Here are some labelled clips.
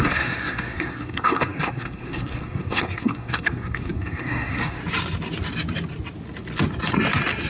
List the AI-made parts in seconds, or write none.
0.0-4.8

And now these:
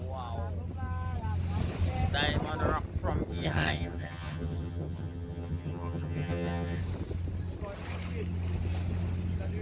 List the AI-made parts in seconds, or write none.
3.3-6.8

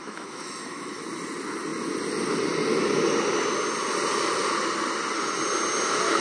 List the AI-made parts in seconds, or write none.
0.0-1.0

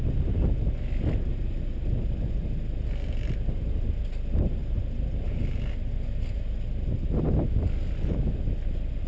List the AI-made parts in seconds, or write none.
none

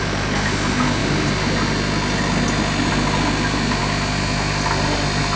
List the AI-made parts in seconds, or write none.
none

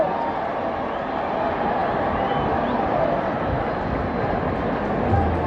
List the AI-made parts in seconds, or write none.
none